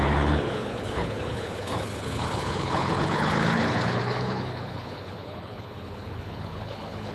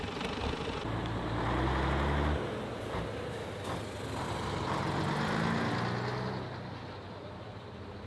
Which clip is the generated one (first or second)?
first